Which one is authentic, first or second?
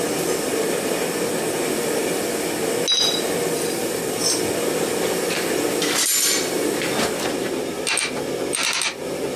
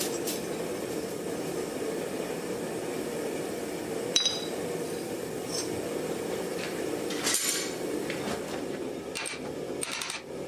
first